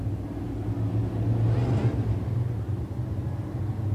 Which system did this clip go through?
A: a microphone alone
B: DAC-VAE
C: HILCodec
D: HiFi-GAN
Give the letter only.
A